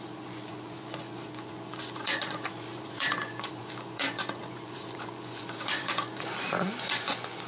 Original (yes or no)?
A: no